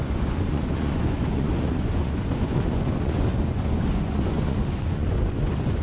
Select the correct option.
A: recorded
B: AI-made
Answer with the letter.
B